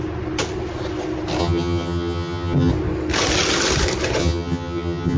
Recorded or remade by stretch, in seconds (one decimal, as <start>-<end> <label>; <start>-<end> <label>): 0.0-1.4 recorded; 1.4-2.7 remade; 2.7-4.2 recorded; 4.2-5.2 remade